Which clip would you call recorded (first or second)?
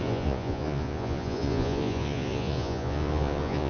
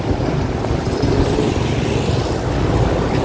second